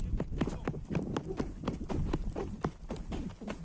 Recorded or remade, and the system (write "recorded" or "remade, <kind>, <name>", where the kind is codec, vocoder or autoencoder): recorded